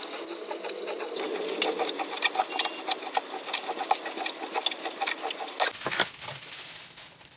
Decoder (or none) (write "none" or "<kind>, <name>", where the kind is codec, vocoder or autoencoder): none